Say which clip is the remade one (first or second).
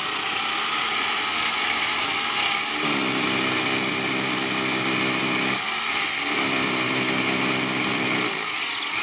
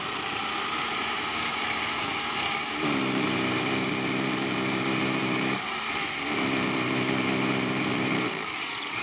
second